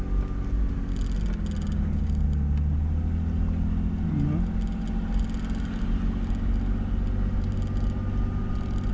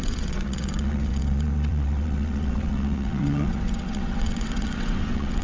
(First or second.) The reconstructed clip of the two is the second